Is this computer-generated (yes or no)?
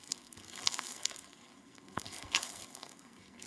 yes